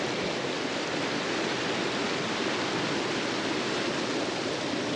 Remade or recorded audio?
recorded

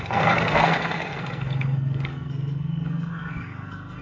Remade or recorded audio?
remade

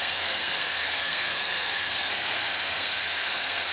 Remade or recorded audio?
remade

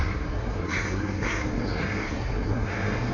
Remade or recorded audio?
remade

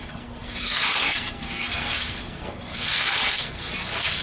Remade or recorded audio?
remade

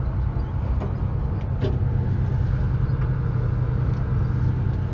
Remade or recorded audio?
recorded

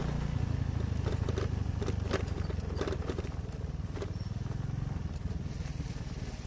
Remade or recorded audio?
recorded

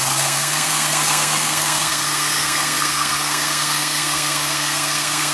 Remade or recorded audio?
remade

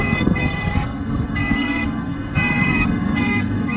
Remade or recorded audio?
remade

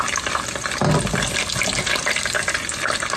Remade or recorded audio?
recorded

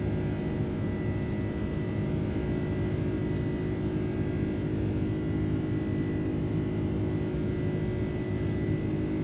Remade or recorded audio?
recorded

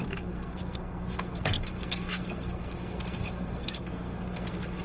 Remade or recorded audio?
remade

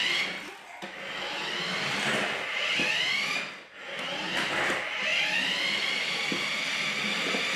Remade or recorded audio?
recorded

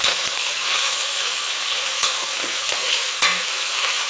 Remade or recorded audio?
remade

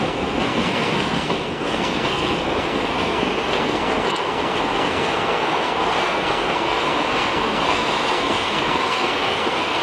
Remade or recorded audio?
remade